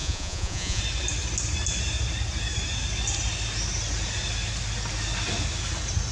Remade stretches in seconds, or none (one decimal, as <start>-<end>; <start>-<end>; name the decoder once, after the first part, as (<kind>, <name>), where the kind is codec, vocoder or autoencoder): 0.0-0.8 (vocoder, Vocos)